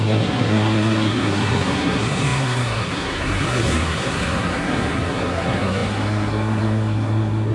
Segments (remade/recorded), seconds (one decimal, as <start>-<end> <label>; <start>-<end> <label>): 0.0-7.5 remade